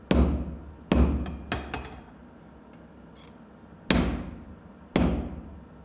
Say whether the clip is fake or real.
real